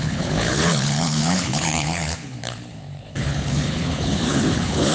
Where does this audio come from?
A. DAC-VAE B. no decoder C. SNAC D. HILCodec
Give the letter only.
D